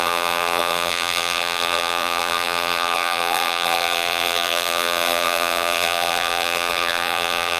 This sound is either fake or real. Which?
fake